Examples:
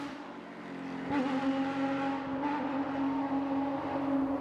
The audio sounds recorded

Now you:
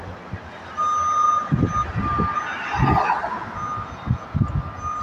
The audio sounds recorded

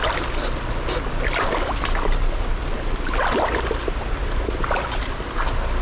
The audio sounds recorded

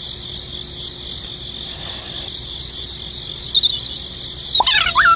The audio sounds recorded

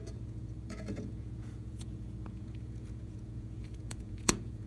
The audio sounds remade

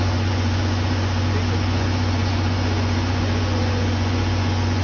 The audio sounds remade